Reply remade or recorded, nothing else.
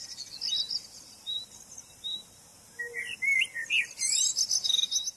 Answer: recorded